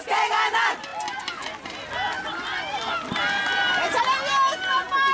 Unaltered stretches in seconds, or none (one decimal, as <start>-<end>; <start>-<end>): 0.0-5.1